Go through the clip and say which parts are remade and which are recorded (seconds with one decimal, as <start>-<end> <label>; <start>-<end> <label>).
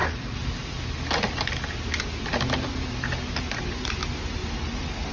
0.0-5.1 recorded